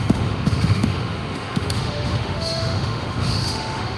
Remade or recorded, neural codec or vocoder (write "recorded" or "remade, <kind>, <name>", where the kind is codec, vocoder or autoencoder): remade, autoencoder, DAC-VAE